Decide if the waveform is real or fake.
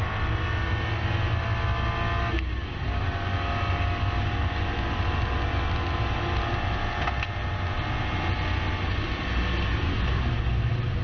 real